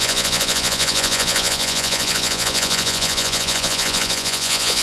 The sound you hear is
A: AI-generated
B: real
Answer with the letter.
A